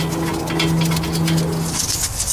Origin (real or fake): real